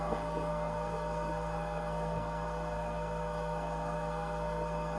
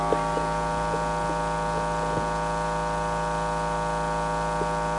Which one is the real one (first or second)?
second